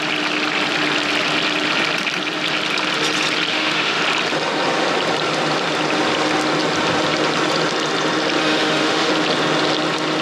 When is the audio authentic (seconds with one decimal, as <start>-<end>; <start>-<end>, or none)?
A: 0.0-3.5; 4.0-8.4; 9.1-10.2